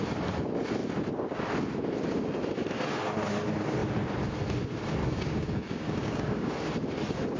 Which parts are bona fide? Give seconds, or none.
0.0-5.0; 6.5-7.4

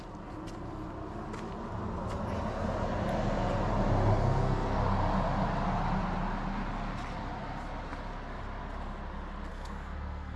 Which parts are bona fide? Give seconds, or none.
0.0-4.2; 4.8-9.5